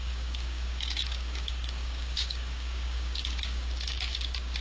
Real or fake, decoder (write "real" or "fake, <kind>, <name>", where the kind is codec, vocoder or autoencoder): fake, codec, DAC